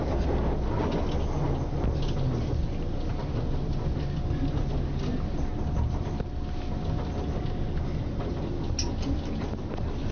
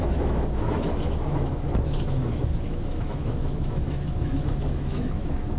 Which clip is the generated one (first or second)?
second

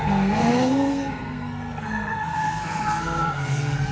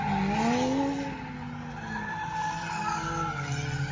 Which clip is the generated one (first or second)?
first